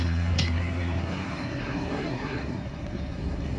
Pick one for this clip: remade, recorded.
remade